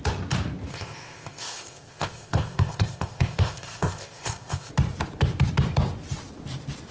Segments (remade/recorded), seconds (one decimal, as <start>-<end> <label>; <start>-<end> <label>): 0.0-0.7 recorded; 0.7-4.7 remade; 4.7-6.9 recorded

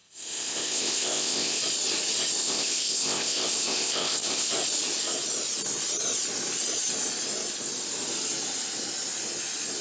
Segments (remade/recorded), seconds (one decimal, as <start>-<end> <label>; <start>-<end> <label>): 0.0-1.6 remade; 1.6-2.4 recorded; 2.4-4.5 remade; 4.5-9.8 recorded

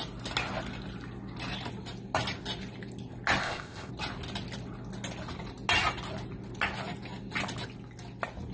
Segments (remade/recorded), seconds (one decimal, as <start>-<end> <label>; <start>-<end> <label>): 0.0-3.4 recorded; 3.4-3.9 remade; 3.9-8.5 recorded

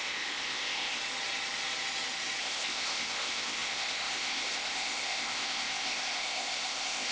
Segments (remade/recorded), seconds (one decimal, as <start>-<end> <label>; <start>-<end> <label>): 0.0-1.0 remade; 1.0-2.4 recorded; 2.4-7.1 remade

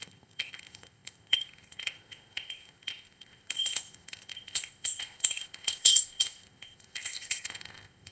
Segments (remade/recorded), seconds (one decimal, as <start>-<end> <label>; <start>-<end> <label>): 0.0-8.1 remade

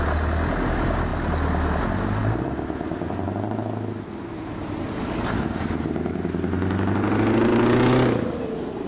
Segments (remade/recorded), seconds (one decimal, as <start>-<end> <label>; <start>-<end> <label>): 0.0-8.9 recorded

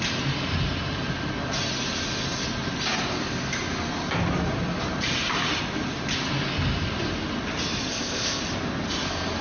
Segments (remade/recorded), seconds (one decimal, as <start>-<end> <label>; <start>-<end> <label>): 0.0-7.9 recorded; 7.9-8.4 remade; 8.4-9.4 recorded